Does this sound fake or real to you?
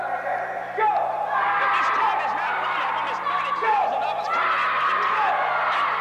real